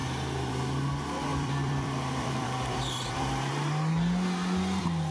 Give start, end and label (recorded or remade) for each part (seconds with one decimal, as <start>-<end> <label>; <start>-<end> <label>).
0.0-1.3 recorded; 1.3-3.5 remade; 3.5-5.1 recorded